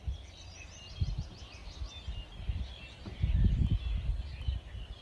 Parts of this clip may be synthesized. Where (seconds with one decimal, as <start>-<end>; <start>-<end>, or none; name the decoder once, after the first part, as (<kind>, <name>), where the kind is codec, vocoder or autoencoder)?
none